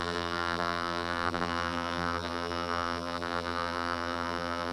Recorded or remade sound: remade